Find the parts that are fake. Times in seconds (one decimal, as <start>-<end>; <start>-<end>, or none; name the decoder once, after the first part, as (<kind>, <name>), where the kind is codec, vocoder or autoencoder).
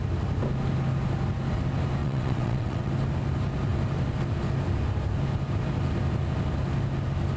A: 2.0-2.9 (vocoder, WaveNeXt)